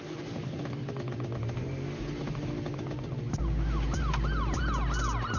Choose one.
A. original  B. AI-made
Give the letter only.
A